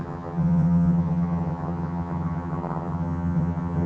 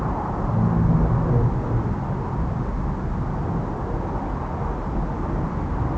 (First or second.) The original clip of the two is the second